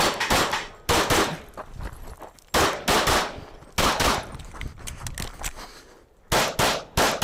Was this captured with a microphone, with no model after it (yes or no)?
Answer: yes